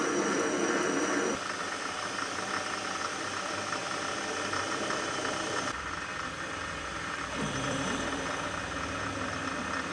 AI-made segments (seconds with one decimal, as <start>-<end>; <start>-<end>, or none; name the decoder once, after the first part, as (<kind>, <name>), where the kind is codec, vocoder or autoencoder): 0.0-9.9 (vocoder, BigVGAN v2)